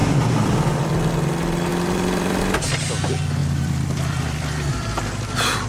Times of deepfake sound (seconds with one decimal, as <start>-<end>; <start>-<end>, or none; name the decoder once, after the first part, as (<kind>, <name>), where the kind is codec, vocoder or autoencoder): 1.7-2.4 (vocoder, BigVGAN v2); 3.4-4.7